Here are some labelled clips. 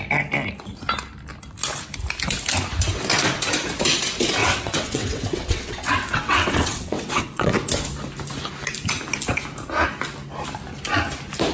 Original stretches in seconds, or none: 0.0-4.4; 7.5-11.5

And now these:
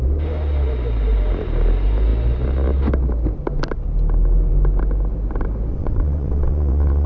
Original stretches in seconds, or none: 0.0-5.7